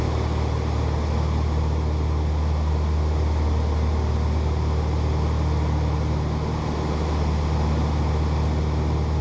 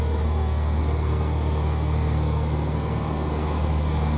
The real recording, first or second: first